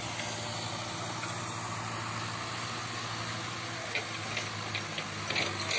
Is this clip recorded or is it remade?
recorded